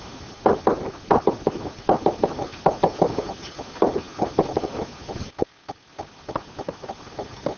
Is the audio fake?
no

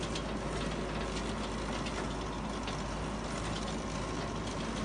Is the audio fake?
no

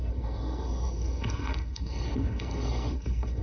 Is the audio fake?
yes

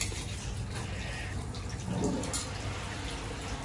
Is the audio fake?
no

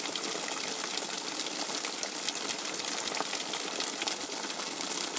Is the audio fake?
no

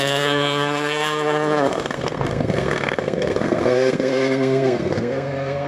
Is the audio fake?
yes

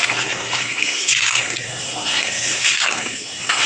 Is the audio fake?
yes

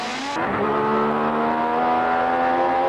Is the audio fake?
no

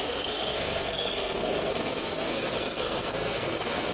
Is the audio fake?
yes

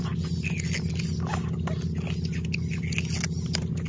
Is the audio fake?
no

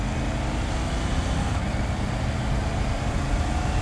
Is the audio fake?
no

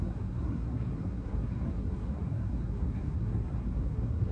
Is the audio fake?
yes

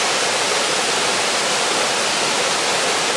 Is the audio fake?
no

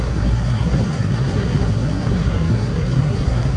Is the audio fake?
yes